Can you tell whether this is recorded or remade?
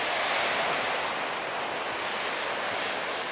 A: recorded